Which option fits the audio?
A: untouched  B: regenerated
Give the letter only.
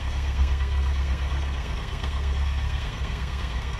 B